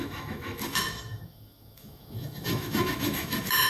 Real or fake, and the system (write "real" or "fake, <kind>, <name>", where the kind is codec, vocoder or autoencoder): fake, autoencoder, DAC-VAE